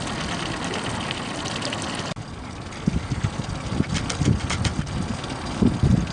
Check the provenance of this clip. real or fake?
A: real